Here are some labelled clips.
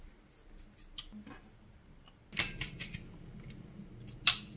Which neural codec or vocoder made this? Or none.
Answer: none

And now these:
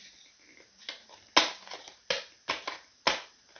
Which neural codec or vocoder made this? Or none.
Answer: none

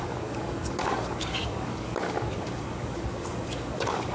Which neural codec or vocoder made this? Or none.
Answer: codec, DAC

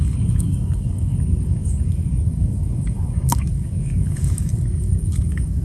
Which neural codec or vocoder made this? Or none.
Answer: codec, DAC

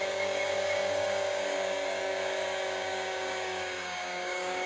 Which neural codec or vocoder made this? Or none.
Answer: codec, DAC